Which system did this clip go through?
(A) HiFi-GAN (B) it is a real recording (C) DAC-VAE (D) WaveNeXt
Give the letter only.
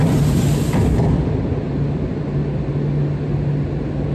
B